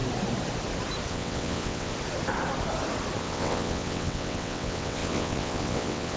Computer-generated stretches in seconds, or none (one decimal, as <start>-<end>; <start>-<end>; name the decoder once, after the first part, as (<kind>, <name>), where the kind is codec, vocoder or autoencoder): 1.1-1.9 (vocoder, WaveNeXt); 3.2-6.2